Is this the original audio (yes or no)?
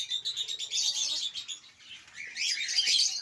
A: yes